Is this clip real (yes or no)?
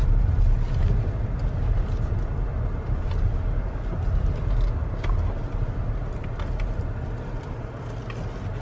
yes